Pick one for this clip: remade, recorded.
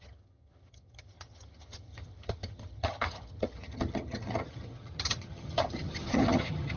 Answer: remade